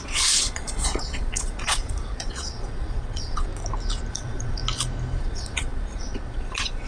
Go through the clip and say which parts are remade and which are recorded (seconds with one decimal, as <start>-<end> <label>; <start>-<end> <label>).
0.0-3.5 remade; 3.5-4.1 recorded; 4.1-4.6 remade; 4.6-5.2 recorded; 5.2-6.9 remade